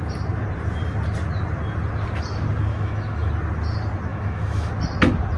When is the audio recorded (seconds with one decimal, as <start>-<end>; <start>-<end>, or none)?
0.0-2.7; 3.3-4.1; 4.7-5.4